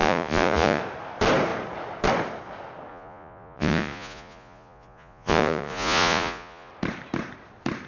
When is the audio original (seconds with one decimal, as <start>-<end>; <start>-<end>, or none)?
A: 0.8-2.9; 6.7-7.9